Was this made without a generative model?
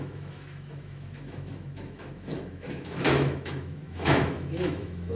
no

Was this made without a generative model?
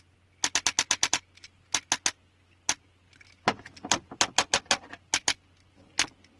yes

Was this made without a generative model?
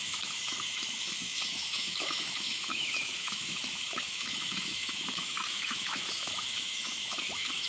no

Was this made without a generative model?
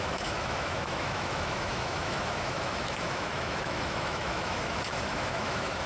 no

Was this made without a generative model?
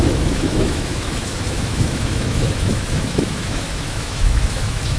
no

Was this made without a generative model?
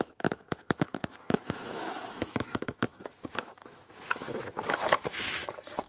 no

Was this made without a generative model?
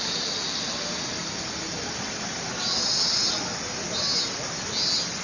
yes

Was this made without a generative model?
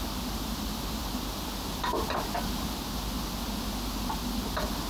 yes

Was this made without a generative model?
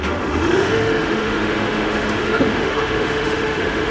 no